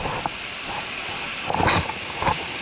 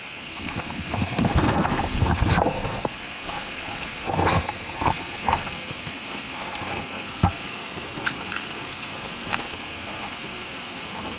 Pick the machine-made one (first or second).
second